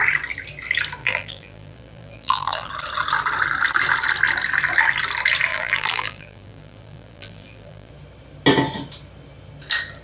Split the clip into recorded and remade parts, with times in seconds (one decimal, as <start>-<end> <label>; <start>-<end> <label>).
0.0-1.0 recorded; 1.0-2.7 remade; 2.7-5.5 recorded; 5.5-7.9 remade; 7.9-10.0 recorded